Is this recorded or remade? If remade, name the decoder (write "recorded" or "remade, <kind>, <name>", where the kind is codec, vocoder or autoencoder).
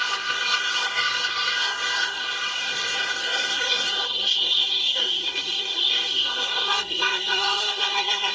remade, codec, SNAC